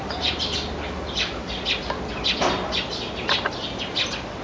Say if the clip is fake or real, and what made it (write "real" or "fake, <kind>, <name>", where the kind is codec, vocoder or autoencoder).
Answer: real